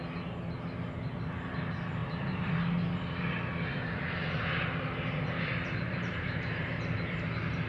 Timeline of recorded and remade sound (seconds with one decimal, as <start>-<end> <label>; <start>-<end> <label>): 0.0-2.0 recorded; 2.0-2.5 remade; 2.5-3.5 recorded; 3.5-4.6 remade; 4.6-5.5 recorded; 5.5-6.7 remade; 6.7-7.7 recorded